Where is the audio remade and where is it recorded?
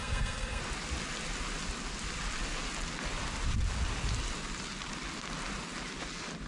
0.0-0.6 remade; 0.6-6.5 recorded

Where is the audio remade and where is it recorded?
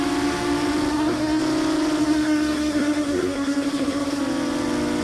0.0-0.9 recorded; 0.9-1.4 remade; 1.4-2.0 recorded; 2.0-4.2 remade; 4.2-5.0 recorded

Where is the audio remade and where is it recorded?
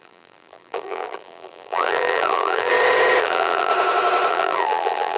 0.0-2.7 remade; 2.7-3.2 recorded; 3.2-3.7 remade; 3.7-4.3 recorded; 4.3-5.2 remade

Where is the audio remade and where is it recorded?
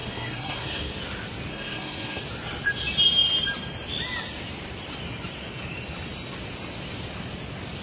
0.0-1.0 remade; 1.0-1.5 recorded; 1.5-2.2 remade; 2.2-7.8 recorded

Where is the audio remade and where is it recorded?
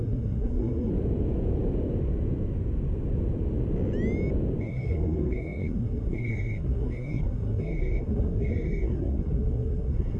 0.0-0.9 remade; 0.9-4.6 recorded; 4.6-10.2 remade